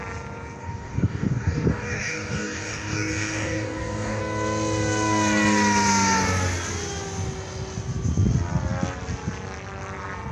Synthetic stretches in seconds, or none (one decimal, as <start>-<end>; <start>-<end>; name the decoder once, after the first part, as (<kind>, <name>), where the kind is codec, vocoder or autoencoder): 0.6-4.2 (codec, DAC)